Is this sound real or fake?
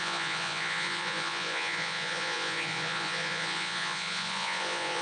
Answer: fake